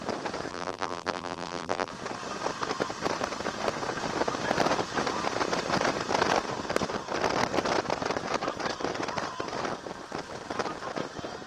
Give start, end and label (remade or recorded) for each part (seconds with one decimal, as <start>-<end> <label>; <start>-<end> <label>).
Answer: 0.0-0.5 recorded; 0.5-1.9 remade; 1.9-11.5 recorded